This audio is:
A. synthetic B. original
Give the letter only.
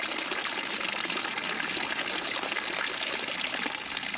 B